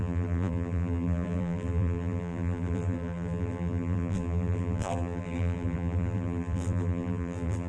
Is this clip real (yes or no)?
no